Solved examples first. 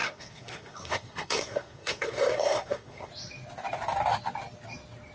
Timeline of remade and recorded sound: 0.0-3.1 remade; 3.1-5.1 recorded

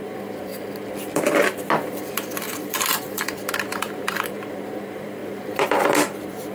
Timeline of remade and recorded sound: 0.0-0.5 remade; 0.5-1.1 recorded; 1.1-6.5 remade

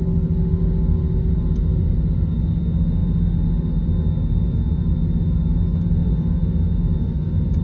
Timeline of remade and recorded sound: 0.0-7.6 recorded

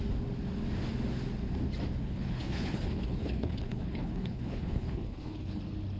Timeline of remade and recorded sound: 0.0-2.0 recorded; 2.0-5.6 remade; 5.6-6.0 recorded

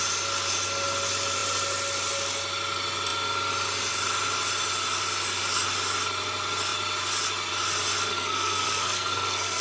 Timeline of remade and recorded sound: 0.0-8.1 recorded; 8.1-9.6 remade

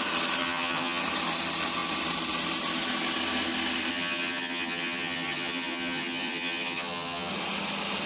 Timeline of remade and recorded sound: 0.0-0.4 recorded; 0.4-1.0 remade; 1.0-3.9 recorded; 3.9-7.3 remade; 7.3-8.1 recorded